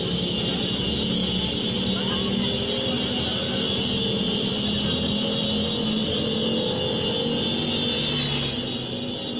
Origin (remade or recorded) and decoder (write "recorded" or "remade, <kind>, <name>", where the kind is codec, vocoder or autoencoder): recorded